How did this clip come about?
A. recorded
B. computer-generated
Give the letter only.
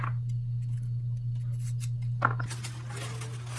A